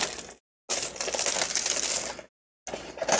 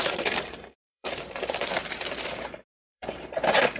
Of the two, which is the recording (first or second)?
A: first